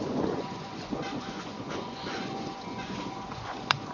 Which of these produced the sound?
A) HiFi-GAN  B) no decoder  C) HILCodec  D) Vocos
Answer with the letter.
D